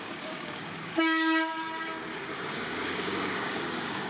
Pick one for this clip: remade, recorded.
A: remade